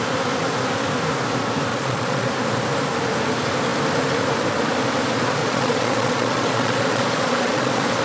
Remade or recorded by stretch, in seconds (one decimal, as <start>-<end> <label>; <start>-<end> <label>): 0.0-1.7 recorded; 1.7-2.3 remade; 2.3-5.4 recorded; 5.4-8.0 remade